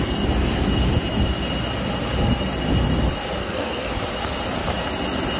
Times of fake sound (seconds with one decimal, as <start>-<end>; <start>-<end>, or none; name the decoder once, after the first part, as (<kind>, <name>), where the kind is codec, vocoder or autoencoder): 3.4-3.9 (codec, SNAC)